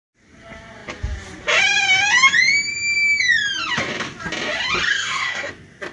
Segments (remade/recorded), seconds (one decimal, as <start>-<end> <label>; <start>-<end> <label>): 0.0-4.9 recorded; 4.9-5.5 remade; 5.5-5.9 recorded